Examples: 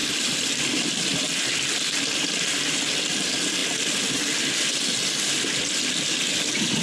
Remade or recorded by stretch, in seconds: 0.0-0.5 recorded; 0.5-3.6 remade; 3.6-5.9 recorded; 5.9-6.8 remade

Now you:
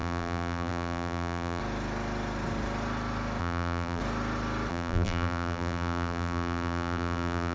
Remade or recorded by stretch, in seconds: 0.0-1.6 remade; 1.6-3.4 recorded; 3.4-4.0 remade; 4.0-4.7 recorded; 4.7-7.5 remade

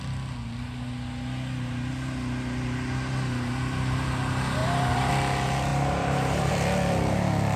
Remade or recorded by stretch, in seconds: 0.0-4.6 recorded; 4.6-5.1 remade; 5.1-5.7 recorded; 5.7-6.5 remade; 6.5-7.6 recorded